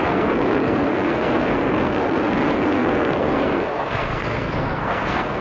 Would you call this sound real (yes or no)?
no